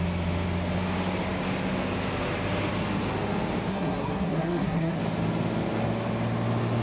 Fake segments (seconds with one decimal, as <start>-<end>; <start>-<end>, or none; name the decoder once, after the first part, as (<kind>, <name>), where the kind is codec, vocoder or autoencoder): 3.7-5.0 (codec, SNAC)